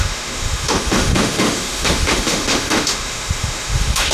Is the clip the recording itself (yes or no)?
no